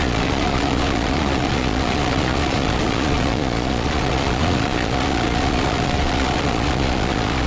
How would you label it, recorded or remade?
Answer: remade